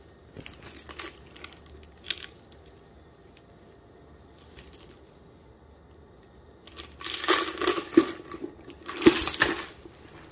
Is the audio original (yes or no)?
yes